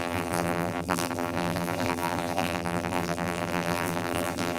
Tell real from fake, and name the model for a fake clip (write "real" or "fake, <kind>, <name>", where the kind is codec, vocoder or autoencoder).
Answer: fake, vocoder, BigVGAN v2